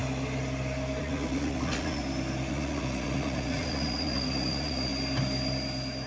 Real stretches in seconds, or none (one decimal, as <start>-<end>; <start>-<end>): 0.0-1.0; 2.0-2.5; 4.9-6.1